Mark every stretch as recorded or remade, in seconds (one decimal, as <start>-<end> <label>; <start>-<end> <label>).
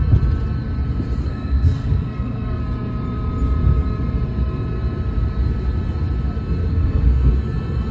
0.0-1.2 recorded; 1.2-2.6 remade; 2.6-6.7 recorded; 6.7-7.3 remade; 7.3-7.9 recorded